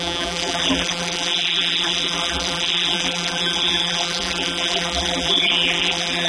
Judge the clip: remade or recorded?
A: remade